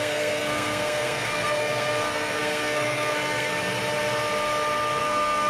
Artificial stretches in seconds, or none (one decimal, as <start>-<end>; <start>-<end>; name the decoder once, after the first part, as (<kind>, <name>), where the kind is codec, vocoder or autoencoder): 0.0-3.5 (codec, SNAC); 5.0-5.5